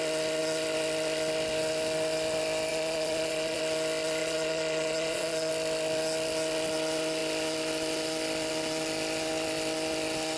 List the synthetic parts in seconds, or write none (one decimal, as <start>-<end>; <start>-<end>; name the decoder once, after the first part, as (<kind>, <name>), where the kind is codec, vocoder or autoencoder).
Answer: 2.7-3.6 (vocoder, Vocos); 4.2-5.5